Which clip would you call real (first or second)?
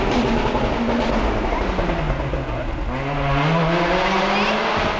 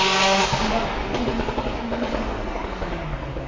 first